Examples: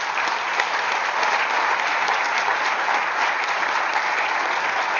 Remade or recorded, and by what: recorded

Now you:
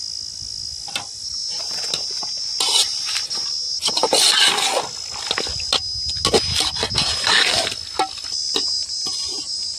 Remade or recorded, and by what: recorded